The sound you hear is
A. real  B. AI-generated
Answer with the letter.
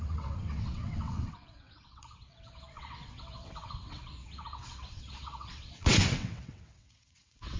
B